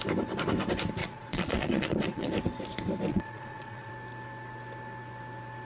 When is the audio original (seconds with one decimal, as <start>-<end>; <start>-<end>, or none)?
0.0-1.0; 2.3-3.1; 3.9-5.6